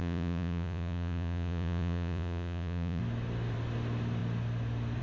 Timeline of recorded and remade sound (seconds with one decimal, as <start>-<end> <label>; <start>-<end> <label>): 0.0-3.0 remade; 3.0-5.0 recorded